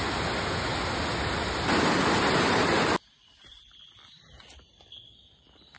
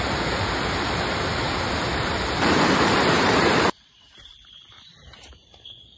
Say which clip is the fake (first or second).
second